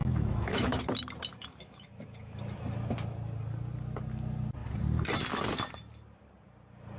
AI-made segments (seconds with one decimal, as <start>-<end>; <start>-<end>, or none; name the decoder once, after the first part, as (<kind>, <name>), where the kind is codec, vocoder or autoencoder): 0.0-0.8 (autoencoder, DAC-VAE); 1.3-2.4